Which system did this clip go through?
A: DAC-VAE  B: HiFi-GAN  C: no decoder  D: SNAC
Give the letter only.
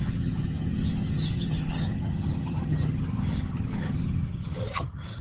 B